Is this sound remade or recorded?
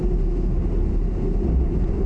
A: recorded